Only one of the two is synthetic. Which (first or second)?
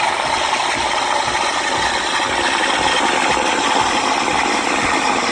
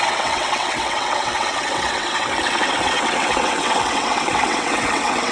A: second